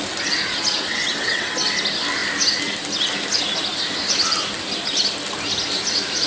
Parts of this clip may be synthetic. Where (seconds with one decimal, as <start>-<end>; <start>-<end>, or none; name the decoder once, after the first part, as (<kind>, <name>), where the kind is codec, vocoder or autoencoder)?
0.9-1.5 (vocoder, WaveNeXt)